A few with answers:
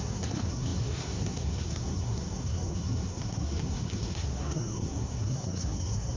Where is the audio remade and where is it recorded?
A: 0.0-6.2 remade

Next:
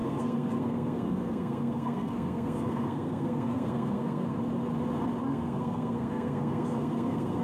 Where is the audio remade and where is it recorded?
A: 0.0-4.4 remade; 4.4-5.3 recorded; 5.3-7.4 remade

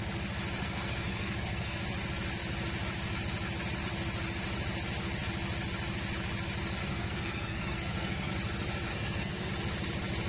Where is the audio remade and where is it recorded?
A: 0.0-0.6 recorded; 0.6-1.8 remade; 1.8-6.8 recorded; 6.8-8.3 remade; 8.3-8.9 recorded; 8.9-9.5 remade; 9.5-10.3 recorded

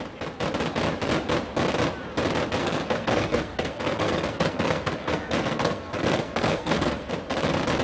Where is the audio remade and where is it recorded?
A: 0.0-2.6 recorded; 2.6-7.1 remade; 7.1-7.8 recorded

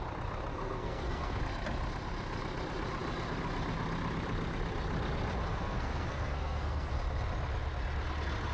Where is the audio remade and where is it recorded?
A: 0.0-0.5 recorded; 0.5-1.4 remade; 1.4-5.5 recorded; 5.5-6.9 remade; 6.9-8.5 recorded

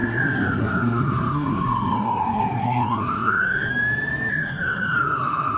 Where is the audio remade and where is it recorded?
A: 0.0-3.7 remade; 3.7-4.3 recorded; 4.3-5.6 remade